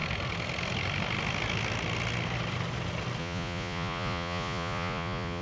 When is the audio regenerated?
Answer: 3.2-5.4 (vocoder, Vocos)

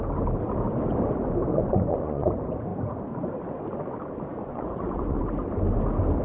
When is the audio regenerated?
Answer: 1.5-2.3 (vocoder, Vocos); 4.4-5.2

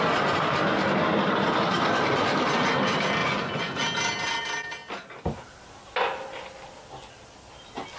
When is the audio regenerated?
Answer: 3.2-3.8 (vocoder, Vocos)

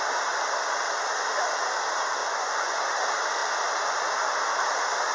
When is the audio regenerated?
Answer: 2.2-2.8 (vocoder, Vocos)